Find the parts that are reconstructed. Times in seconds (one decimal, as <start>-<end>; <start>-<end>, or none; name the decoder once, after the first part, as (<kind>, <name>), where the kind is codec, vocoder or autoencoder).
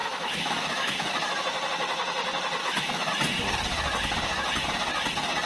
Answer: 0.0-1.1 (autoencoder, DAC-VAE); 2.6-3.1